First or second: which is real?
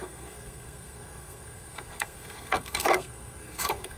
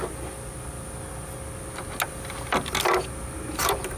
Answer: second